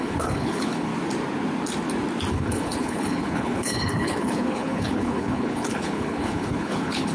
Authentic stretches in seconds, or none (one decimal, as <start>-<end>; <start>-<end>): 0.9-2.3